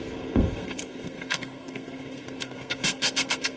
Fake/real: fake